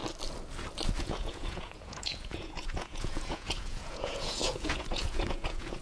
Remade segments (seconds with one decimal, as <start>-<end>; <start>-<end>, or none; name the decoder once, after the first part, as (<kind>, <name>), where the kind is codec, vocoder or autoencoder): 1.0-5.8 (vocoder, Vocos)